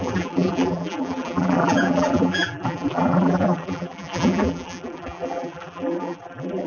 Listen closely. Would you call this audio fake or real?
fake